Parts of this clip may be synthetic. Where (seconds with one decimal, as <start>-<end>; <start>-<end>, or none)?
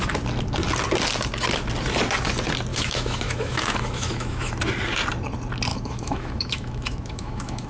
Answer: 2.7-4.5; 5.7-7.7